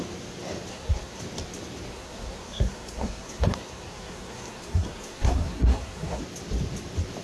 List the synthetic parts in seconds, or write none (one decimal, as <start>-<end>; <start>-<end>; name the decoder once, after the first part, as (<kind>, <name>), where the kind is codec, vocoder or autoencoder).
0.7-1.2 (codec, SNAC); 1.9-6.2